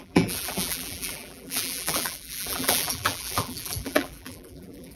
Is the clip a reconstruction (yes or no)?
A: yes